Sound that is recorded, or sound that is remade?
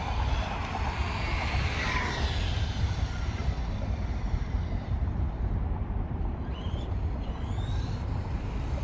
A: remade